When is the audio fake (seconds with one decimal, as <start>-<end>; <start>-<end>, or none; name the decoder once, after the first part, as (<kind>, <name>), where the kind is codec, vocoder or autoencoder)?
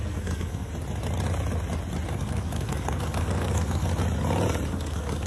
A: 0.0-0.7 (codec, SNAC); 2.1-3.9; 4.7-5.3